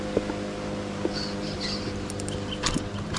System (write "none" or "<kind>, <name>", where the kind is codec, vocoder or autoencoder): none